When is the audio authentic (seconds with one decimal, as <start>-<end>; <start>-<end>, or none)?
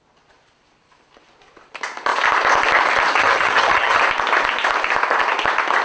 0.0-3.2; 4.0-5.8